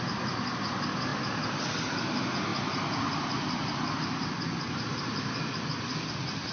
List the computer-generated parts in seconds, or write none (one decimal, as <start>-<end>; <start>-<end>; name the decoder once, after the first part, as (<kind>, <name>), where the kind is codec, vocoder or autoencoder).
none